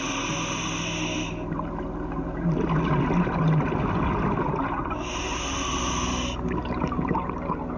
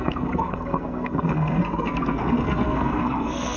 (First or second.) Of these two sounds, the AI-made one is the second